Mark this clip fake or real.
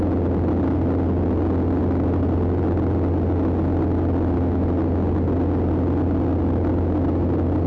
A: real